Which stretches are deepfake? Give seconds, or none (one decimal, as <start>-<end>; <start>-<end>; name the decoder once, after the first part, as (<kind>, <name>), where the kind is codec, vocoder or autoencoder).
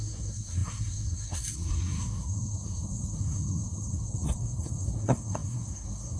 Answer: 0.0-6.2 (codec, SNAC)